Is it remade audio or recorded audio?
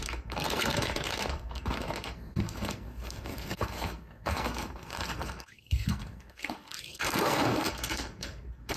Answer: remade